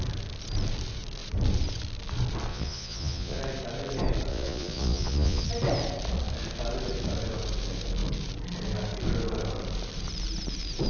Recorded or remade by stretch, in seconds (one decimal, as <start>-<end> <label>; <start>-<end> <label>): 0.0-2.5 recorded; 2.5-3.4 remade; 3.4-4.3 recorded; 4.3-5.5 remade; 5.5-10.9 recorded

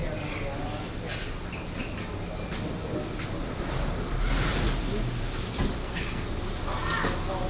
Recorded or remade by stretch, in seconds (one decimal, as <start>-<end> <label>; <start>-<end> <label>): 0.0-5.8 recorded; 5.8-6.3 remade; 6.3-7.5 recorded

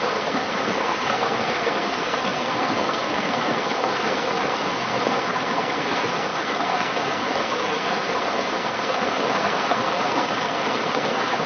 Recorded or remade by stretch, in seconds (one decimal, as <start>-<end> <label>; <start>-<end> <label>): 0.0-11.5 remade

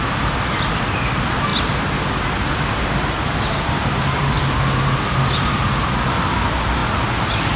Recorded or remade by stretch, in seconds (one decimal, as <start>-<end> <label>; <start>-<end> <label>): 0.0-7.6 recorded

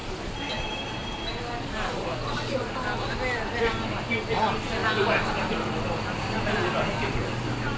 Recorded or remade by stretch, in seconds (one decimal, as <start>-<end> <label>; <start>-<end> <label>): 0.0-7.8 recorded

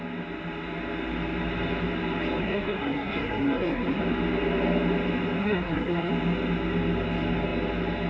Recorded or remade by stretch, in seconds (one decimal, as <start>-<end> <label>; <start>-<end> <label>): 0.0-2.4 recorded; 2.4-4.0 remade; 4.0-5.4 recorded; 5.4-6.1 remade; 6.1-8.1 recorded